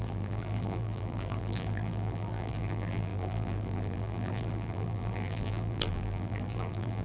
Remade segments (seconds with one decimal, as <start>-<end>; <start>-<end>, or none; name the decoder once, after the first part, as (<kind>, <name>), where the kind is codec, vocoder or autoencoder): 0.0-7.0 (vocoder, BigVGAN v2)